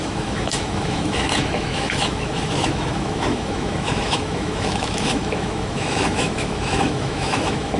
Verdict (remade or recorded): remade